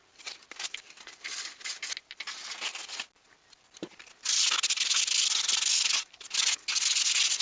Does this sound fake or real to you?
real